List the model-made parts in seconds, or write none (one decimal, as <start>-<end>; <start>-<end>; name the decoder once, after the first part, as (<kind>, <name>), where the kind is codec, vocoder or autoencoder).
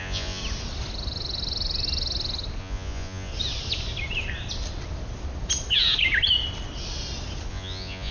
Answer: 0.0-0.4 (vocoder, Vocos); 2.6-3.3; 7.5-8.1